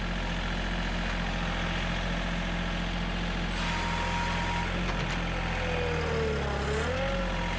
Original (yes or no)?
yes